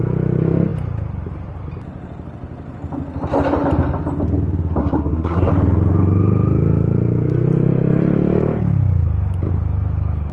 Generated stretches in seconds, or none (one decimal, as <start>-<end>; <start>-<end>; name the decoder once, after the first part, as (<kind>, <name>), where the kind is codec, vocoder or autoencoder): 4.8-5.5 (codec, SNAC)